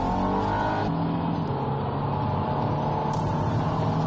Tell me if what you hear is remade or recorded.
recorded